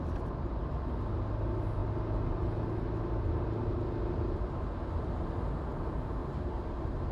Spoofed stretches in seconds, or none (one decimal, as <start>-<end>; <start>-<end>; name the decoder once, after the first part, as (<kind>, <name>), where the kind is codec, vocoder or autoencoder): none